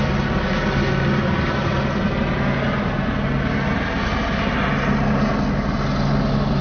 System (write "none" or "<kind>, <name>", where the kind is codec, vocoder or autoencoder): none